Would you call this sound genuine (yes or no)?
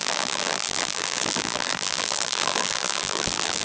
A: no